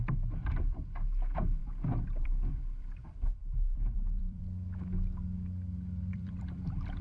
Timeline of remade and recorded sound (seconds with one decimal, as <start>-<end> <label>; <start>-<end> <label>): 0.0-1.6 recorded; 1.6-4.4 remade; 4.4-6.1 recorded; 6.1-7.0 remade